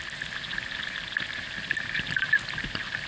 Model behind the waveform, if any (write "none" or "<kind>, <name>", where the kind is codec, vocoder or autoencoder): none